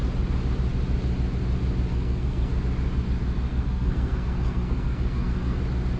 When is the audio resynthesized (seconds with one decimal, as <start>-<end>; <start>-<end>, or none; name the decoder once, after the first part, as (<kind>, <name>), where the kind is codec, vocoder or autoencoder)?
1.9-2.5 (codec, SNAC); 3.5-5.6